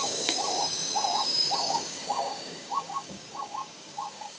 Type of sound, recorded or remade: remade